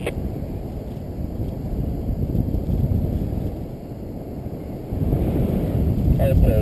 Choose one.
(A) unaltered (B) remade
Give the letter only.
A